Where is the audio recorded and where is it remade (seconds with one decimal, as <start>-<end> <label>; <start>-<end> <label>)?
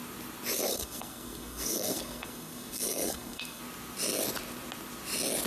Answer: 0.0-0.7 recorded; 0.7-3.6 remade; 3.6-5.5 recorded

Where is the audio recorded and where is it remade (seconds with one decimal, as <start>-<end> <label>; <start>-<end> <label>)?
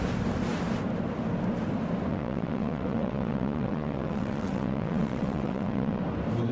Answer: 0.0-2.1 recorded; 2.1-6.0 remade; 6.0-6.5 recorded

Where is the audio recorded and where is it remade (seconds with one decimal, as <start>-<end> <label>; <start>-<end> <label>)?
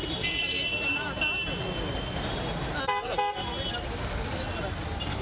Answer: 0.0-5.2 recorded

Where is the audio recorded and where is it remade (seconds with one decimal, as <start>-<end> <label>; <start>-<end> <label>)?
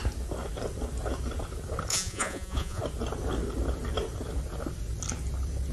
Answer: 0.0-1.9 recorded; 1.9-2.8 remade; 2.8-5.7 recorded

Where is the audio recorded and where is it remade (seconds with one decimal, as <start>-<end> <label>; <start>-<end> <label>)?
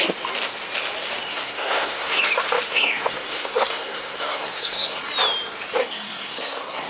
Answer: 0.0-1.3 recorded; 1.3-2.2 remade; 2.2-2.7 recorded; 2.7-5.0 remade; 5.0-5.8 recorded; 5.8-6.9 remade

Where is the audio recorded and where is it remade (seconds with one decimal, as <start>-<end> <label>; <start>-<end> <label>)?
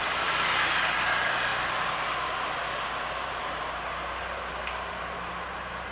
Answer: 0.0-5.9 recorded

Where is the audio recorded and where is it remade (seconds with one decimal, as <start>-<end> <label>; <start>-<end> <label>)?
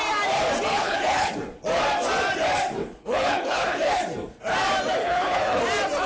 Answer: 0.0-0.7 recorded; 0.7-1.3 remade; 1.3-2.8 recorded; 2.8-4.0 remade; 4.0-5.0 recorded; 5.0-5.6 remade; 5.6-6.1 recorded